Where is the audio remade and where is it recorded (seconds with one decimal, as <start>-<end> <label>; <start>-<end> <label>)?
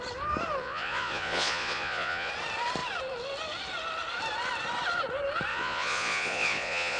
0.0-0.6 recorded; 0.6-2.3 remade; 2.3-5.5 recorded; 5.5-7.0 remade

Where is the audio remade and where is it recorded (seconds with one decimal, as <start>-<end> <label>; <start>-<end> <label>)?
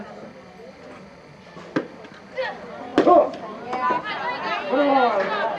0.0-5.6 recorded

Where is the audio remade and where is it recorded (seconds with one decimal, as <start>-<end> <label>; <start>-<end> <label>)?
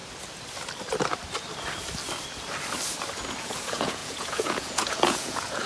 0.0-3.4 recorded; 3.4-5.7 remade